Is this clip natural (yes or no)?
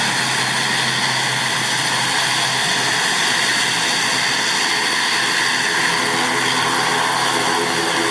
yes